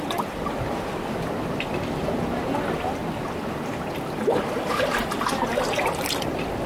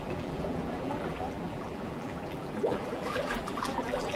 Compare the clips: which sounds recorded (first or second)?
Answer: first